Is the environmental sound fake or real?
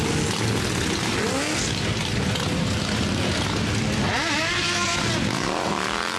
real